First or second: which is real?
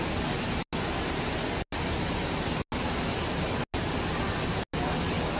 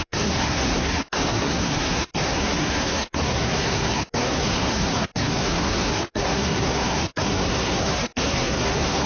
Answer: first